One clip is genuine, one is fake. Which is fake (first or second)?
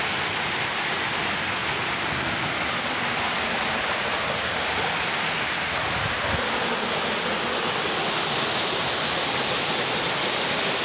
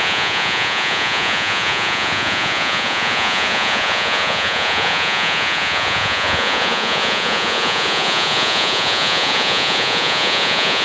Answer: second